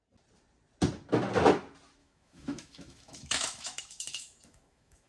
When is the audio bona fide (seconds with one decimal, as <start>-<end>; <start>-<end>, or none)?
0.0-2.0